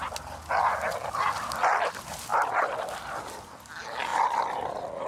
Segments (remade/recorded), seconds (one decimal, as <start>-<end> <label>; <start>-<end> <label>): 0.0-2.3 recorded; 2.3-3.2 remade; 3.2-4.1 recorded; 4.1-5.1 remade